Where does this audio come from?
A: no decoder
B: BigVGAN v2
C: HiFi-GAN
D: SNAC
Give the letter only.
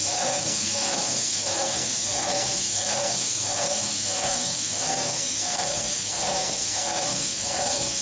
D